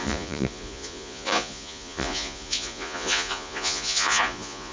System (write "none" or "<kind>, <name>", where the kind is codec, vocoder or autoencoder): vocoder, Vocos